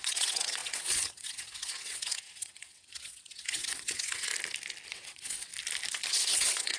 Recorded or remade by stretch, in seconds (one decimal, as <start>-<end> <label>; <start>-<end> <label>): 0.0-4.3 remade; 4.3-4.9 recorded; 4.9-5.5 remade; 5.5-6.1 recorded; 6.1-6.8 remade